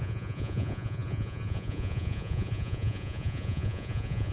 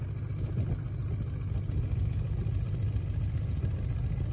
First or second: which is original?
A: second